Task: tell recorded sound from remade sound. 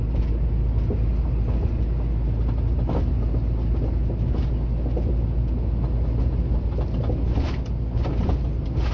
recorded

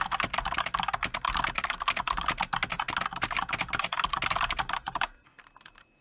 recorded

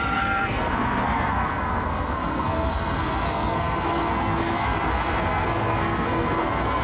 remade